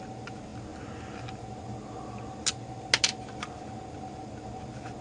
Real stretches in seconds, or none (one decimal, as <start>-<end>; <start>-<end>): 0.0-5.0